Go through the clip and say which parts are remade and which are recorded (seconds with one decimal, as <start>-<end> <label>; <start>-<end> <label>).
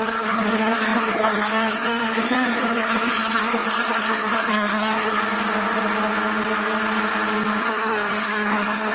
0.0-5.2 remade; 5.2-7.6 recorded; 7.6-8.9 remade